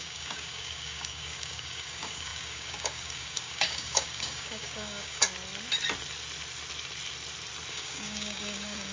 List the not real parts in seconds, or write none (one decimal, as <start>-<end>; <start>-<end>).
0.0-5.2; 7.7-8.9